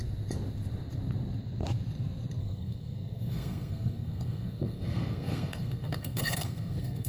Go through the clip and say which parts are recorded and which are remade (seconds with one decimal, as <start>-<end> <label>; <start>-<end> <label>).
0.0-2.4 recorded; 2.4-7.1 remade